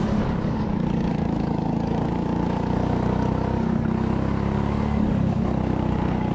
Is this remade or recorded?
remade